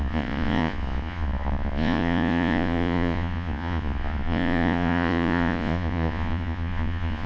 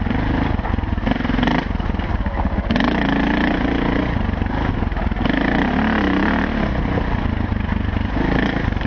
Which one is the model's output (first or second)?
first